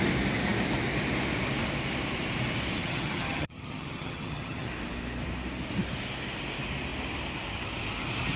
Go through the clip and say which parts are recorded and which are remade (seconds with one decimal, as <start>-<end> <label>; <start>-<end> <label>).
0.0-2.8 recorded; 2.8-4.7 remade; 4.7-8.4 recorded